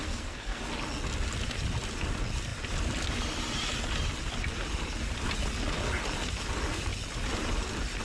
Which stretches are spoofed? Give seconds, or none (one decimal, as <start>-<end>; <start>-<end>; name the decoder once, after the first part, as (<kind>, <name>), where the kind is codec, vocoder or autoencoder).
0.0-0.6 (codec, SNAC)